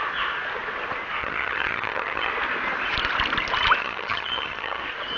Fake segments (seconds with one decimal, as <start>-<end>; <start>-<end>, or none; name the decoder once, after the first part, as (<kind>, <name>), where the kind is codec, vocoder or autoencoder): 1.2-2.3 (vocoder, HiFi-GAN); 3.8-4.8